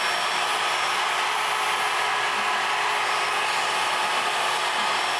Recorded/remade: recorded